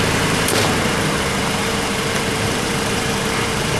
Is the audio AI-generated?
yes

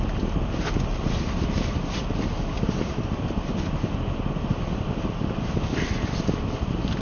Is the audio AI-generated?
no